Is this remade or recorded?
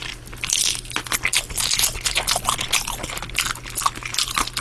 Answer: recorded